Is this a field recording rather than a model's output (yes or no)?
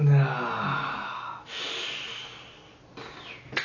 yes